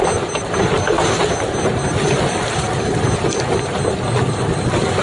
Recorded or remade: recorded